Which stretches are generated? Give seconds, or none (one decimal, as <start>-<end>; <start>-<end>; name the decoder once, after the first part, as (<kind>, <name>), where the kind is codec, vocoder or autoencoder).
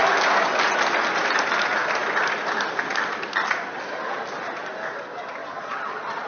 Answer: 5.4-6.3 (vocoder, Vocos)